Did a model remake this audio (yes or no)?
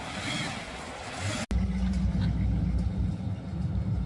no